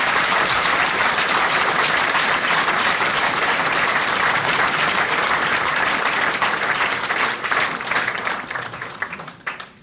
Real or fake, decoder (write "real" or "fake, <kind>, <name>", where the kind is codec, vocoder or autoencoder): fake, vocoder, BigVGAN v2